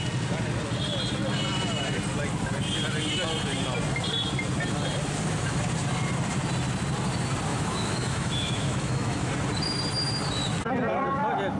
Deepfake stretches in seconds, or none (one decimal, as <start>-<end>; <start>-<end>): 7.5-9.3